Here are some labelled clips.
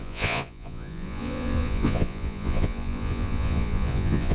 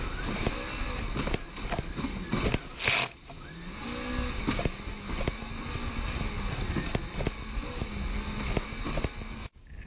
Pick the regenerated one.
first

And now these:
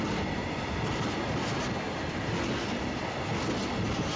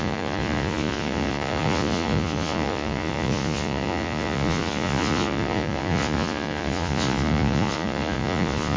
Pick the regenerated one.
second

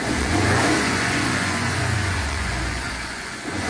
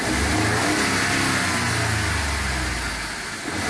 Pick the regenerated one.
first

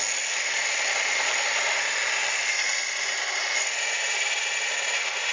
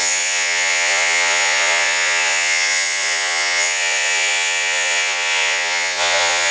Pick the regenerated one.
second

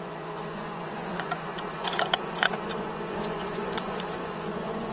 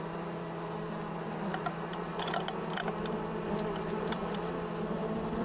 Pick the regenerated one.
first